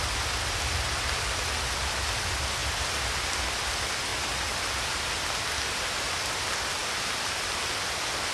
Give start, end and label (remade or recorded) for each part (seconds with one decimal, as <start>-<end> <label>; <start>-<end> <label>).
0.0-8.3 recorded